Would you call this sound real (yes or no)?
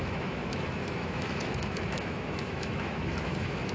no